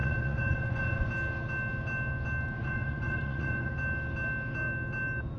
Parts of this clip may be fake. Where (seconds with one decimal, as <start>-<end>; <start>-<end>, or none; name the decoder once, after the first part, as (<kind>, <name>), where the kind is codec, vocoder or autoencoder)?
0.0-1.1 (vocoder, Vocos); 2.6-3.7